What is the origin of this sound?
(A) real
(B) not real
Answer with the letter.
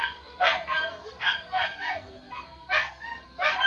B